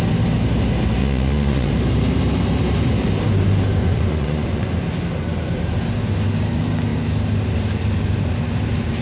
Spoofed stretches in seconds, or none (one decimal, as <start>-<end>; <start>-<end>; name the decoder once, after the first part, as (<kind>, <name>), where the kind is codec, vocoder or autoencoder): 1.0-1.7 (vocoder, Vocos); 3.8-4.7